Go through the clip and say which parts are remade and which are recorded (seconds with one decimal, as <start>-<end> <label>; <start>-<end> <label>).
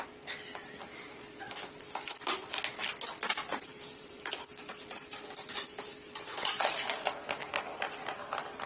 0.0-3.5 recorded; 3.5-4.2 remade; 4.2-8.7 recorded